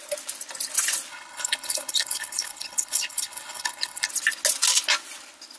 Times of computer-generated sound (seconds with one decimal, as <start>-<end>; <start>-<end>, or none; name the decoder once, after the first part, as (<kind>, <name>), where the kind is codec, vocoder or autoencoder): 1.1-4.1 (codec, HILCodec)